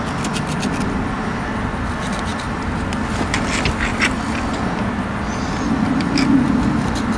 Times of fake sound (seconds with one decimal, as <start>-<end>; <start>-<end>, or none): none